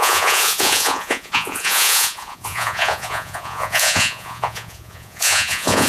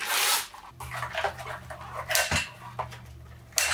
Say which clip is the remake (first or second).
first